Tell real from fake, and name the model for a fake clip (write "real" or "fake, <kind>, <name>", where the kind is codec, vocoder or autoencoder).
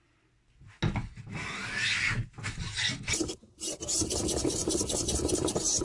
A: real